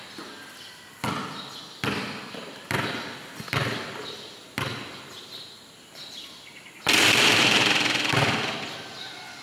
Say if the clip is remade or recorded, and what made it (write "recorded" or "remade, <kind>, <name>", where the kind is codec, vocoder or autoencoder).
recorded